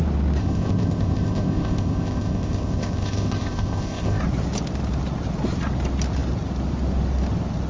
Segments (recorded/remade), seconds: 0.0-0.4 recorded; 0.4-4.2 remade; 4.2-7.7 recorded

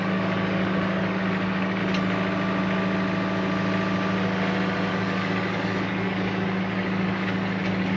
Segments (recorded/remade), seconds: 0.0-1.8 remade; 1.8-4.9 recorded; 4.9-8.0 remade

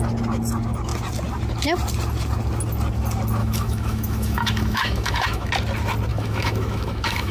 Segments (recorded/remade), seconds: 0.0-3.4 recorded; 3.4-5.5 remade; 5.5-6.1 recorded; 6.1-7.3 remade

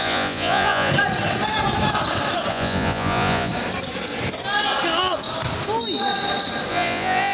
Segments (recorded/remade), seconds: 0.0-0.9 remade; 0.9-2.5 recorded; 2.5-3.5 remade; 3.5-6.7 recorded; 6.7-7.3 remade

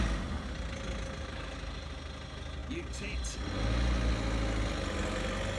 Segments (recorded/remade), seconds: 0.0-5.6 recorded

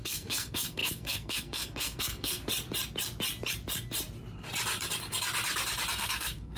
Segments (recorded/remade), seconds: 0.0-2.5 remade; 2.5-5.9 recorded; 5.9-6.6 remade

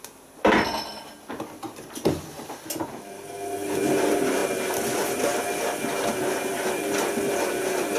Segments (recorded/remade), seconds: 0.0-8.0 recorded